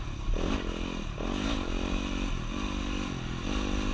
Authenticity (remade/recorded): recorded